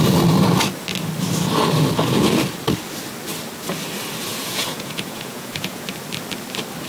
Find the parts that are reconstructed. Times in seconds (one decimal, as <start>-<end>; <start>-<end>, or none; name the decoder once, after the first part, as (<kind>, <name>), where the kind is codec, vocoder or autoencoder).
4.3-5.8 (vocoder, Vocos)